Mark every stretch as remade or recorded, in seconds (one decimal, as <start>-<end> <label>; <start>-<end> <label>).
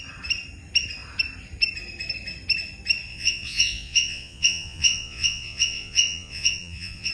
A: 0.0-3.1 recorded; 3.1-7.1 remade